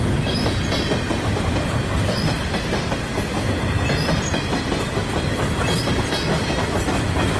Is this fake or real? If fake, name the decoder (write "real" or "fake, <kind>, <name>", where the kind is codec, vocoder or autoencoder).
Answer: real